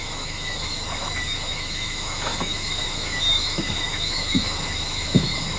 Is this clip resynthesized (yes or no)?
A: yes